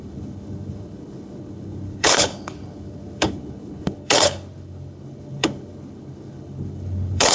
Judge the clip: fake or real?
fake